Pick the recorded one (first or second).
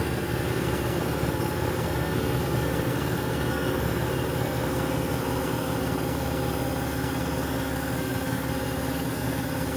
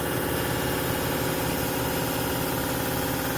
second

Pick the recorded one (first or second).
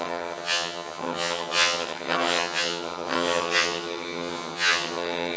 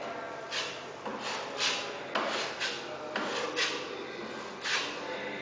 second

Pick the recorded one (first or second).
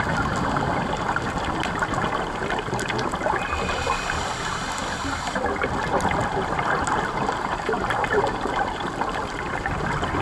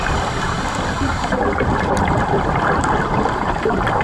first